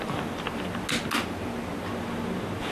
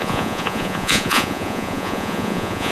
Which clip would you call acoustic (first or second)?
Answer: first